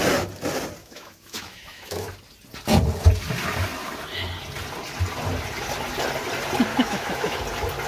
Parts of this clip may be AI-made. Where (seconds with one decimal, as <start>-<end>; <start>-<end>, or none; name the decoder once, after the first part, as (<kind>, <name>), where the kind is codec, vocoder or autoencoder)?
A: 0.8-2.1 (autoencoder, DAC-VAE); 6.7-7.4